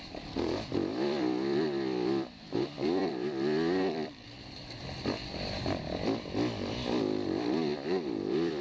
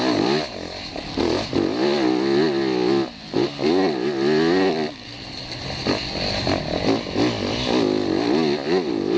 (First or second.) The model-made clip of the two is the first